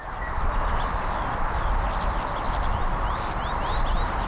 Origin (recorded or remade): recorded